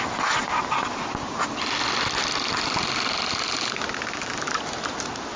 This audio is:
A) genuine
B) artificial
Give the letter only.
A